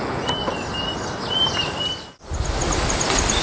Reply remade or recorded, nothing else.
recorded